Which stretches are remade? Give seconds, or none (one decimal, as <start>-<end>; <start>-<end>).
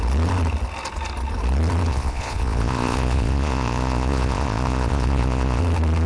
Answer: 1.9-5.6